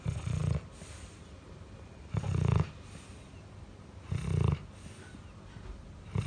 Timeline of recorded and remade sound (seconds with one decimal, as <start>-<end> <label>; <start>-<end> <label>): 0.0-6.3 recorded